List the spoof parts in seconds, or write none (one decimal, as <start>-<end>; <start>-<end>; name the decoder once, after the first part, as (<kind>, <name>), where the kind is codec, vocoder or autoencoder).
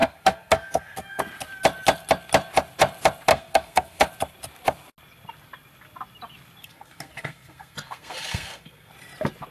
0.0-1.2 (codec, SNAC); 3.3-4.1; 6.6-8.9